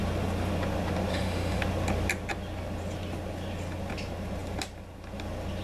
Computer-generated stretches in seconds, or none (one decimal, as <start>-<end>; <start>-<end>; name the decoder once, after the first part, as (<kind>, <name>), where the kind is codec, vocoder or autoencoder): 1.1-1.6 (autoencoder, DAC-VAE)